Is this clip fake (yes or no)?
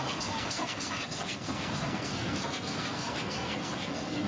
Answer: yes